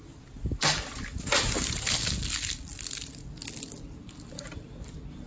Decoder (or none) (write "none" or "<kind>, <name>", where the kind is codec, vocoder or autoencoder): none